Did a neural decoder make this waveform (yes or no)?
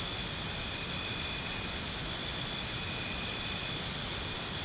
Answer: no